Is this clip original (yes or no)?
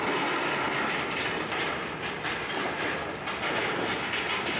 yes